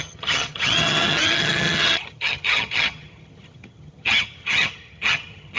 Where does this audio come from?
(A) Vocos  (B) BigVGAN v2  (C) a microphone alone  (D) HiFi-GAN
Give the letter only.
D